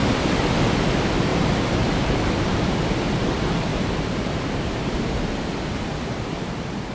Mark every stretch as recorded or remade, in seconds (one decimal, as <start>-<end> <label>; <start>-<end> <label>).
0.0-1.3 recorded; 1.3-2.7 remade; 2.7-3.7 recorded; 3.7-5.2 remade; 5.2-6.9 recorded